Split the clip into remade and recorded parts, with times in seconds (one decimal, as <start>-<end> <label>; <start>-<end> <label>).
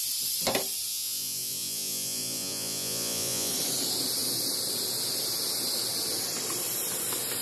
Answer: 0.0-0.9 recorded; 0.9-3.5 remade; 3.5-7.4 recorded